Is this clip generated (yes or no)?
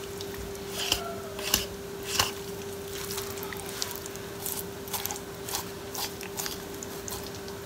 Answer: no